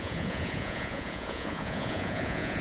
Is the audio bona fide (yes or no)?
no